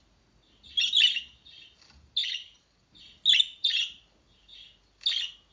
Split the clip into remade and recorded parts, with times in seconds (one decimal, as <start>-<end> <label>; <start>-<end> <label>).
0.0-5.5 recorded